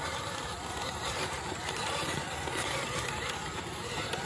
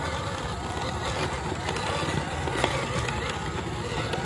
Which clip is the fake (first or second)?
first